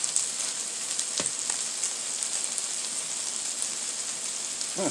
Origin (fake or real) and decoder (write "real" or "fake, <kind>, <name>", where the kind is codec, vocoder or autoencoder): real